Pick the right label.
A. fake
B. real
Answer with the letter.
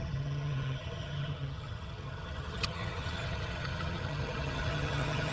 A